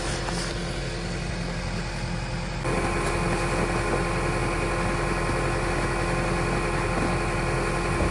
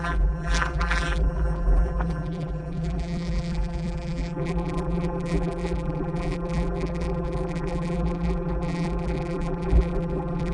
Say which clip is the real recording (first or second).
first